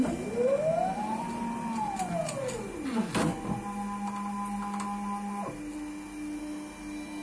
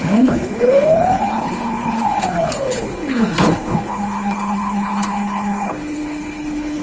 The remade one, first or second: second